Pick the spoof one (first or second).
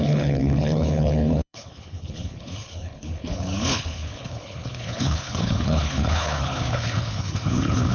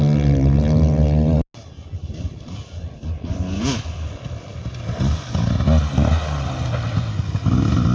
first